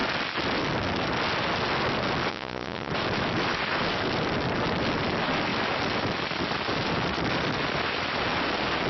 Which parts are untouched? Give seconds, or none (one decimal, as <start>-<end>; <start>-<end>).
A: 0.0-2.3; 2.9-8.9